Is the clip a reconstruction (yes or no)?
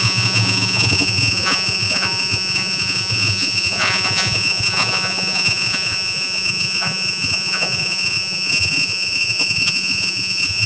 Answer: yes